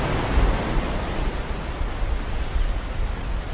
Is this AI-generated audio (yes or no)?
no